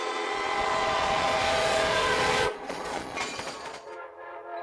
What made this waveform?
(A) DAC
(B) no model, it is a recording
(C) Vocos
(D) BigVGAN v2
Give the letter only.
C